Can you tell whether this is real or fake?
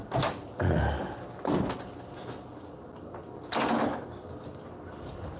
real